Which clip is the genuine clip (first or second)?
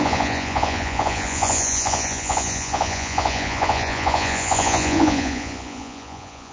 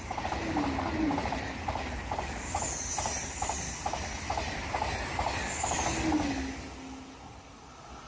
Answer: second